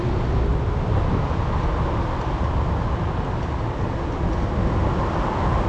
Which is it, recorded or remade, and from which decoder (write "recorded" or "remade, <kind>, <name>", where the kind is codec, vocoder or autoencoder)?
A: recorded